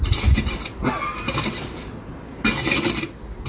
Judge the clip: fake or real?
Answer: real